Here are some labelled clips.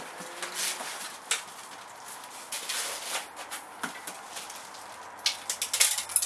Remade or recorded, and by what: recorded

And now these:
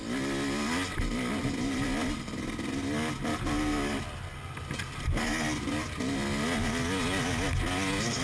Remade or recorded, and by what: recorded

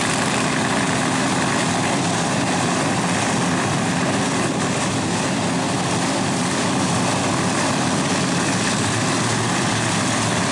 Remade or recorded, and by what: recorded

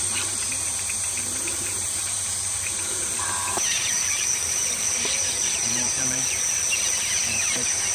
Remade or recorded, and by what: remade, vocoder, BigVGAN v2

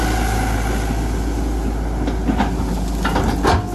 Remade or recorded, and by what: recorded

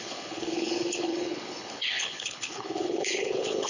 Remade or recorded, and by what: remade, codec, HILCodec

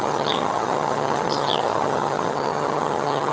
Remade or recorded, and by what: remade, vocoder, HiFi-GAN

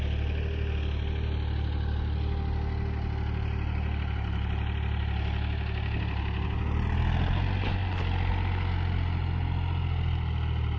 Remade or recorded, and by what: recorded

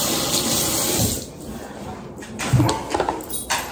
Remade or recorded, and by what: recorded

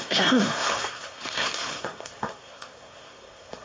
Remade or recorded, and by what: remade, codec, SNAC